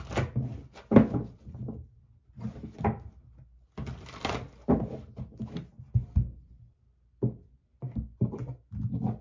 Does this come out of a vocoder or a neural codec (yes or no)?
no